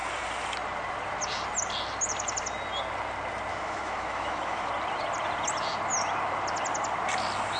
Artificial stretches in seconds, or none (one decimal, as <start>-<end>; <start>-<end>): 3.5-4.7